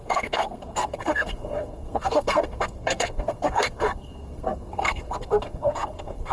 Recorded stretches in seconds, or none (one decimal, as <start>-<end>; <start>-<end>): none